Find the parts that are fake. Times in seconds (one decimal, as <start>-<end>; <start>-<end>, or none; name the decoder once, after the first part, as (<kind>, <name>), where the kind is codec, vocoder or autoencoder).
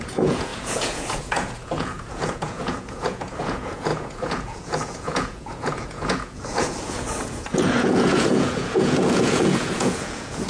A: 0.0-10.5 (vocoder, Vocos)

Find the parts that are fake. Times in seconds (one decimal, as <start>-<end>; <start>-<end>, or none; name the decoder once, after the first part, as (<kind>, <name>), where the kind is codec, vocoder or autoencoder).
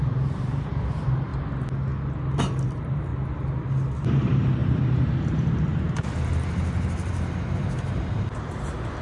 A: 0.0-1.3 (vocoder, BigVGAN v2); 2.3-3.1; 4.0-9.0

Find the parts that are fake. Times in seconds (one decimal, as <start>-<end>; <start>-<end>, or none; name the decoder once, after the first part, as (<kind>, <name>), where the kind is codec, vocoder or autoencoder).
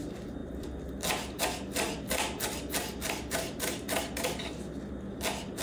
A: none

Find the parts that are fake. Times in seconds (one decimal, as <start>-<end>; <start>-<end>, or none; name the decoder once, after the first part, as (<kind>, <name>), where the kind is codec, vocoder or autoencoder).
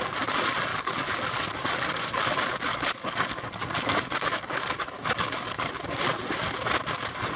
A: 0.7-2.2 (codec, DAC); 2.7-5.7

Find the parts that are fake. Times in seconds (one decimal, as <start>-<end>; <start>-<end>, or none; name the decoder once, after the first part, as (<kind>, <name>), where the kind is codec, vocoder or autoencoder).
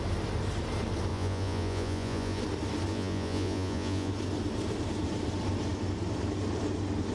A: 1.1-2.4 (vocoder, Vocos); 2.9-4.1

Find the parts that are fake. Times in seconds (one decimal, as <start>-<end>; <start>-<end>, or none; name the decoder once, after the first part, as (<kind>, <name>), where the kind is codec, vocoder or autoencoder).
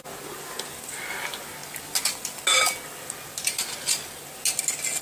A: none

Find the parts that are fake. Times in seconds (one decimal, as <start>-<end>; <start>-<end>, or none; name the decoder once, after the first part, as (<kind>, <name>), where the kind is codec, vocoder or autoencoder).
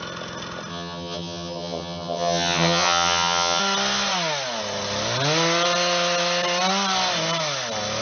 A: 0.7-3.6 (vocoder, HiFi-GAN)